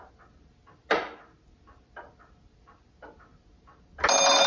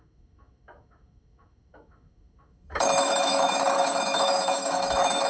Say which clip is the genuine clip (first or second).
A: first